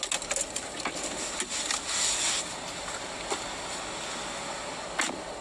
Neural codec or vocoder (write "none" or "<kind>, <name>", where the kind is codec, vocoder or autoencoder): none